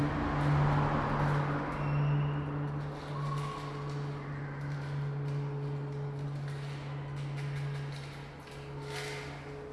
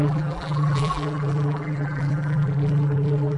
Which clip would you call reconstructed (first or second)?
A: second